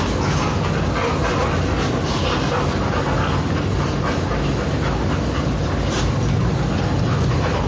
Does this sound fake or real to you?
real